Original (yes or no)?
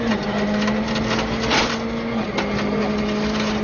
yes